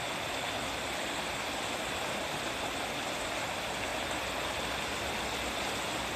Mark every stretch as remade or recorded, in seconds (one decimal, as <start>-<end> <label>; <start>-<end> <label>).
0.0-6.2 recorded